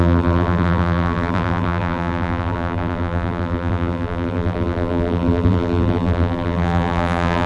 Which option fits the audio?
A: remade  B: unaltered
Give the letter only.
A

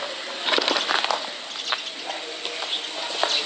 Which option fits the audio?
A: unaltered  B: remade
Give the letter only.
A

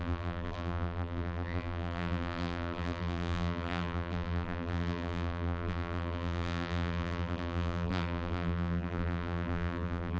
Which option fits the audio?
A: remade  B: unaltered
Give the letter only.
A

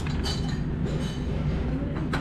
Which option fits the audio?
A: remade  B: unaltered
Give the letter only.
B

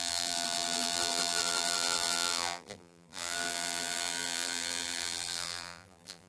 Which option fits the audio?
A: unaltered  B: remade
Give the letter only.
B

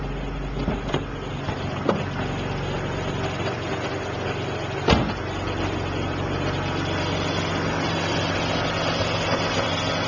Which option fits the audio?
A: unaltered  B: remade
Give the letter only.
A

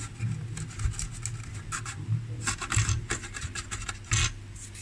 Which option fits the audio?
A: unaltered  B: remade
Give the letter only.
A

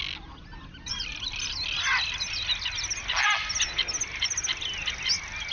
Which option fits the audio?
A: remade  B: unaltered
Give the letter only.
B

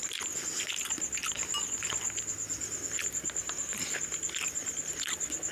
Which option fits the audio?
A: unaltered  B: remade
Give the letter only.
A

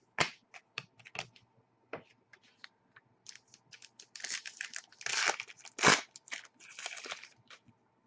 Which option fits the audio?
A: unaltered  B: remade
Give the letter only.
A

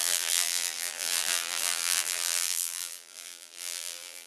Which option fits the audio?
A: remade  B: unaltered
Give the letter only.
A